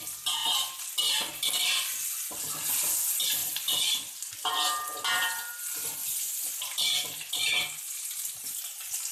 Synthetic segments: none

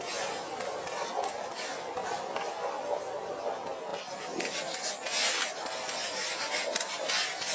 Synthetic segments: none

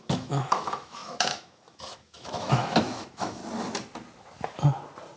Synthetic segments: 0.0-3.4 (autoencoder, DAC-VAE)

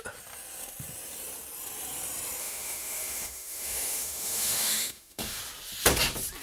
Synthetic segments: 2.4-5.4 (autoencoder, DAC-VAE)

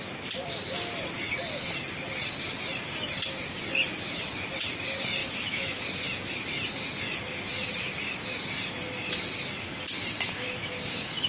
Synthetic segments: 5.2-5.8 (autoencoder, DAC-VAE); 10.0-11.3